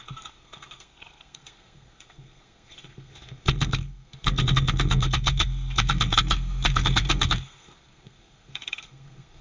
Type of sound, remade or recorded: remade